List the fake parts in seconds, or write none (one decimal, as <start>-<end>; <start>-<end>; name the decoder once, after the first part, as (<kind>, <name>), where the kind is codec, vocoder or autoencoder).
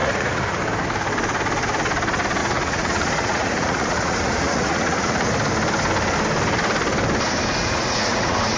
0.0-0.6 (vocoder, Vocos); 2.4-5.3; 7.6-8.6